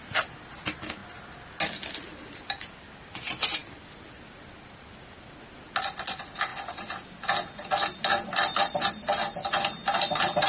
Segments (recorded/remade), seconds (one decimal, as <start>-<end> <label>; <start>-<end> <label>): 0.0-10.5 recorded